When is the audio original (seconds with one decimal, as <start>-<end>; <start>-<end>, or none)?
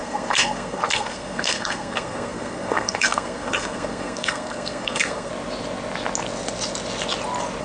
5.3-7.6